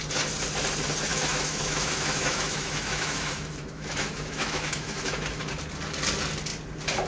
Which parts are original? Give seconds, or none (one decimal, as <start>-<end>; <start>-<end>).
0.0-1.1; 5.4-7.1

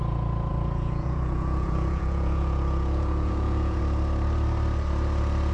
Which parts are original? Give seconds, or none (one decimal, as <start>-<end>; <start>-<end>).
0.0-0.5; 3.8-5.5

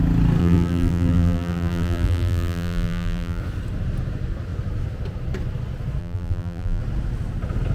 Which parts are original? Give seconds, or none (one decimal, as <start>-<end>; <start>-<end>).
0.0-0.4; 3.4-6.0; 6.8-7.7